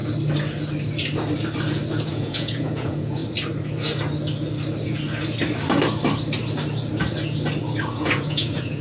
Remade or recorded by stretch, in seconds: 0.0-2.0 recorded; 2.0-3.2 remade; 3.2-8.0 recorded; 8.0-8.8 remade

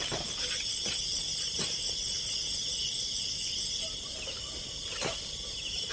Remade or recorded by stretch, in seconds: 0.0-5.9 recorded

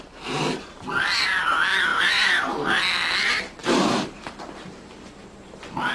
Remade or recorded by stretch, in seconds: 0.0-1.9 recorded; 1.9-2.8 remade; 2.8-3.6 recorded; 3.6-5.0 remade; 5.0-5.9 recorded